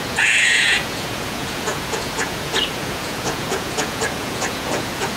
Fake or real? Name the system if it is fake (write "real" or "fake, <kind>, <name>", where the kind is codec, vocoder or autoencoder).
fake, vocoder, Vocos